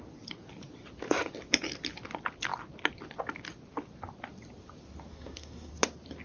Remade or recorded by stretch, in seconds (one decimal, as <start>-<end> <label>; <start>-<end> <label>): 0.0-5.1 recorded; 5.1-5.7 remade; 5.7-6.2 recorded